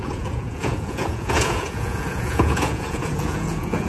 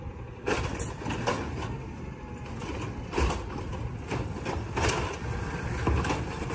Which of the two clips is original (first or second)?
second